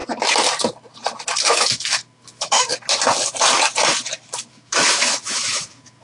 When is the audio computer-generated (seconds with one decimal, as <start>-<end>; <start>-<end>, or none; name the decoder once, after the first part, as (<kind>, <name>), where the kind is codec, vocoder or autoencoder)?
1.4-2.7 (autoencoder, DAC-VAE); 4.5-6.0